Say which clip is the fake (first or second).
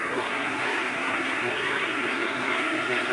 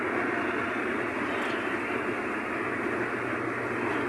first